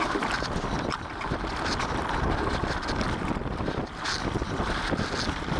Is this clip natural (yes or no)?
yes